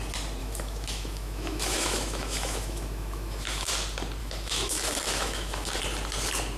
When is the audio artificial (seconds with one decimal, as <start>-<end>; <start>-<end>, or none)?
0.4-3.7; 4.2-5.8